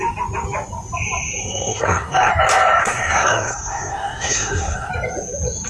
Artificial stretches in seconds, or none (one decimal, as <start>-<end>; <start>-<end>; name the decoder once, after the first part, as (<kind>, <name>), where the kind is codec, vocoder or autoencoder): 1.4-2.3 (codec, SNAC); 2.8-4.9